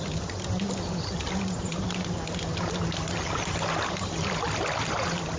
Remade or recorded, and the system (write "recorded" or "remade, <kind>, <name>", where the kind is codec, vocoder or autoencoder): recorded